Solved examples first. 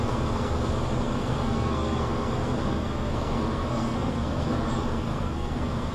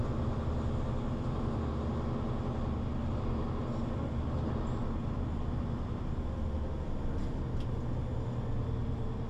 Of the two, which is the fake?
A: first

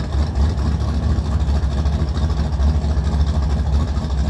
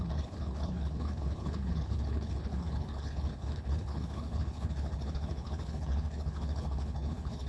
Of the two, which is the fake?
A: second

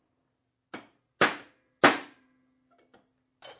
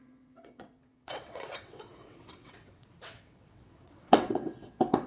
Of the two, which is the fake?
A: second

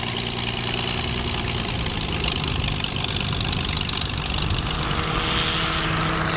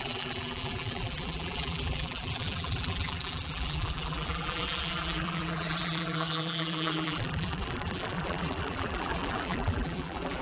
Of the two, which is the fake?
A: second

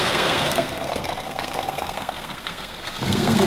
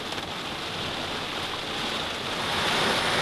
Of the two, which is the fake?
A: first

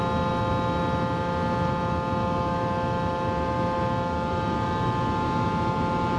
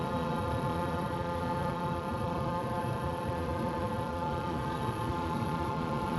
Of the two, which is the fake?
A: second